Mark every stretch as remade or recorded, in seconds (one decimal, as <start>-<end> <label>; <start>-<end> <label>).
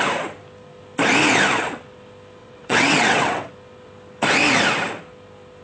0.0-2.4 recorded; 2.4-3.5 remade; 3.5-5.6 recorded